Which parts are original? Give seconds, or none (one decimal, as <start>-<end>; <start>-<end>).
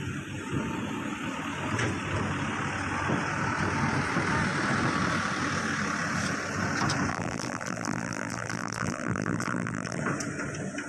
0.0-7.1; 10.0-10.9